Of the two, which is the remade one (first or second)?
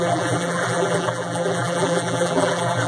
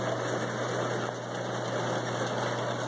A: first